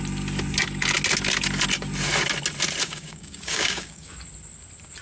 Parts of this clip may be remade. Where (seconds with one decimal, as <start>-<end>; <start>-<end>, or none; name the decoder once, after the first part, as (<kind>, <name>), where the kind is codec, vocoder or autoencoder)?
2.8-4.1 (codec, DAC)